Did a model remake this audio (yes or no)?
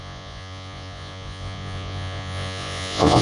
yes